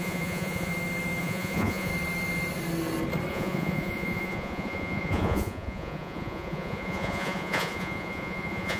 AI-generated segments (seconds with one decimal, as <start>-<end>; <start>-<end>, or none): 0.0-0.7; 1.2-1.9; 3.3-8.8